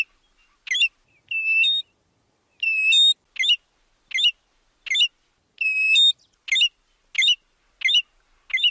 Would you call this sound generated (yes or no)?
no